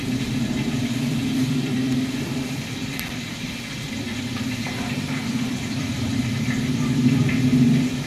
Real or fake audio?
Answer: fake